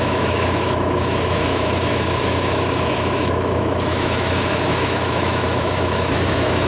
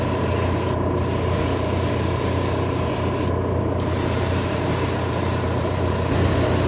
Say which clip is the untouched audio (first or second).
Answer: second